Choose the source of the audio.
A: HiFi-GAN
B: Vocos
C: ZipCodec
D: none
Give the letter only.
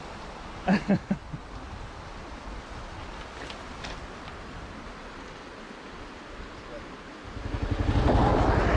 D